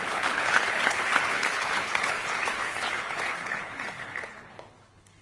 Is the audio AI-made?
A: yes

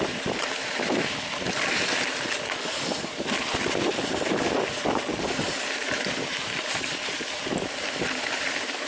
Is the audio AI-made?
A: no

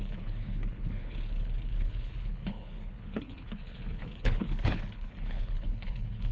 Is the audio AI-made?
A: yes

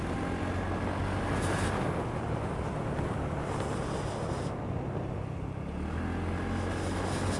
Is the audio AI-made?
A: no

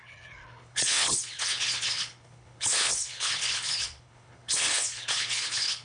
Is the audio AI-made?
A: yes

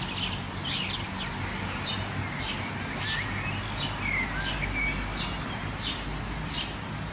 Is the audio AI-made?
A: no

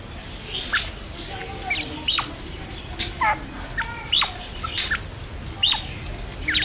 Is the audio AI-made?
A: no